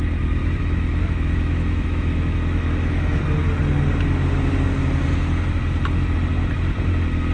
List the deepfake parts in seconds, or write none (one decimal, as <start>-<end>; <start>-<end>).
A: 0.4-3.2